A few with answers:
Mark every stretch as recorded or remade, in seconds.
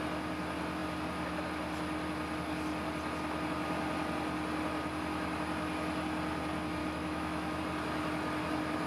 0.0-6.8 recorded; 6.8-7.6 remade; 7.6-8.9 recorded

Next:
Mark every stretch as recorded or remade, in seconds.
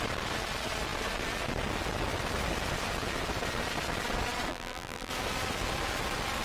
0.0-4.5 recorded; 4.5-5.1 remade; 5.1-6.4 recorded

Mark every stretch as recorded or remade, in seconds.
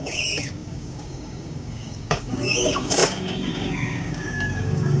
0.0-5.0 remade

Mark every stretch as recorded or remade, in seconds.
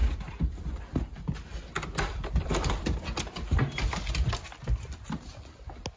0.0-3.6 remade; 3.6-6.0 recorded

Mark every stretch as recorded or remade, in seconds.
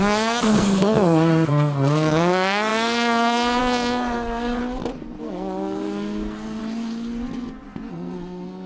0.0-4.6 remade; 4.6-5.2 recorded; 5.2-6.6 remade; 6.6-7.9 recorded; 7.9-8.7 remade